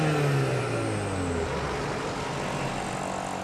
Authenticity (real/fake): real